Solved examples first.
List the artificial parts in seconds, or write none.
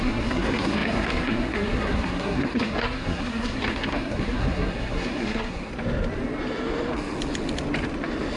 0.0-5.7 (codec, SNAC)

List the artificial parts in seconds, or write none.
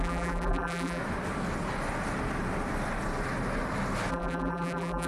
0.0-1.0 (vocoder, BigVGAN v2); 4.1-5.1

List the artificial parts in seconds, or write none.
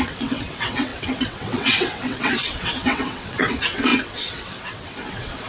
0.0-5.5 (vocoder, WaveNeXt)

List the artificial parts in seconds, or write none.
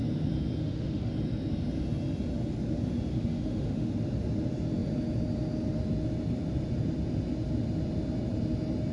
0.6-1.1 (autoencoder, DAC-VAE); 3.1-3.9